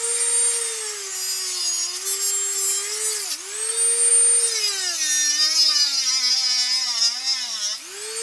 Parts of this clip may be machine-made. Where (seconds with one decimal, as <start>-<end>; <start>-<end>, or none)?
none